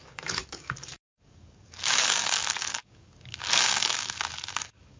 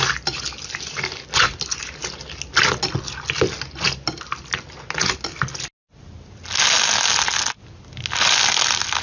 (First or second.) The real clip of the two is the second